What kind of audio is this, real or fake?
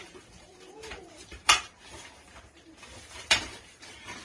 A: fake